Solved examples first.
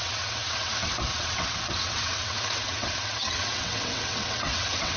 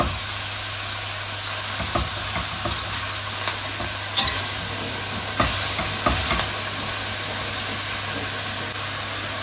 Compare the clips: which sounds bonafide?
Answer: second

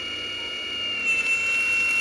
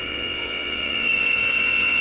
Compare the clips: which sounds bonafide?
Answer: first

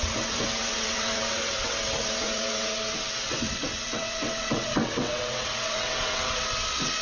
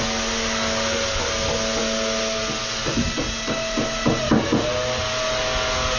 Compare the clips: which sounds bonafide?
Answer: second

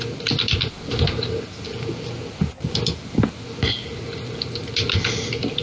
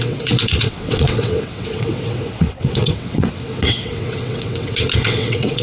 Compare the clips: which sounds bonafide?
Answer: first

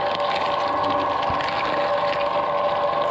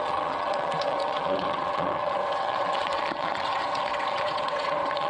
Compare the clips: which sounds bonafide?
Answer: first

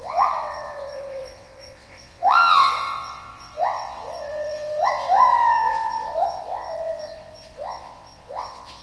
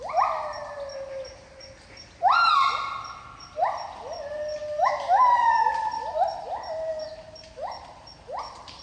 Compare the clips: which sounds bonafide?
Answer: second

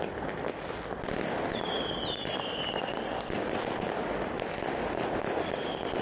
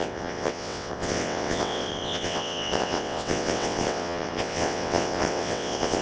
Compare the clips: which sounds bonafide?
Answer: first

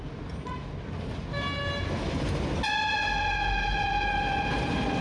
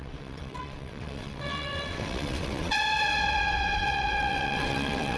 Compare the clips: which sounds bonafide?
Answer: first